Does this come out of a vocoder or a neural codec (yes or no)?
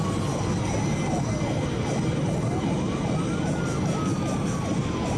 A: no